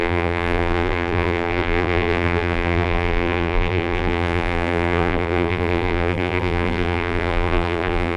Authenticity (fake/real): fake